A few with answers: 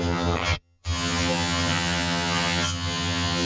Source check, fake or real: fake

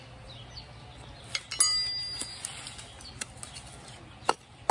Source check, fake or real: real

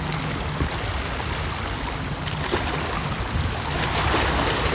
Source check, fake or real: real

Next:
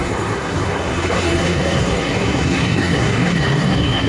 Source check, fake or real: fake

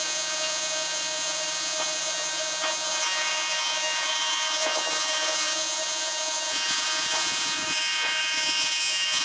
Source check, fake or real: fake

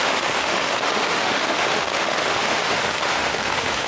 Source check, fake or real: fake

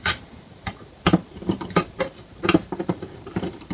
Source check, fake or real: fake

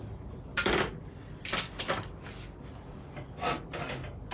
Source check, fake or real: fake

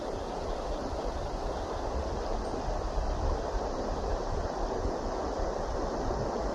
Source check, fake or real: real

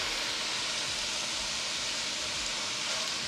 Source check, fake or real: real